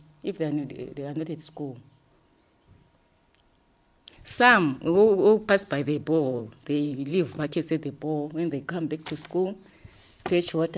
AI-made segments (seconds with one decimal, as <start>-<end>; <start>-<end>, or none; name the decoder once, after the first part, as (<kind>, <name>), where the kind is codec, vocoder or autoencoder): 0.0-0.9 (vocoder, BigVGAN v2); 2.0-3.9; 5.5-7.1; 8.8-10.8